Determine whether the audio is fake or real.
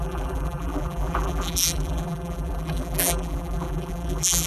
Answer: fake